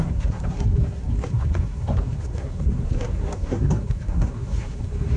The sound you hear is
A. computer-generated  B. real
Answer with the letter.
A